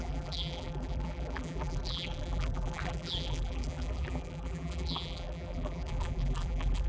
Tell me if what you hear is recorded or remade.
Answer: remade